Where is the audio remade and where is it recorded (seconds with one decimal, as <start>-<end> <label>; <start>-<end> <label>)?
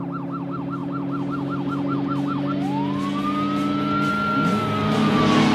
0.0-5.5 recorded